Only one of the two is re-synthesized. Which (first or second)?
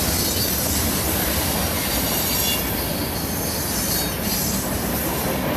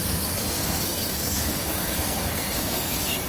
second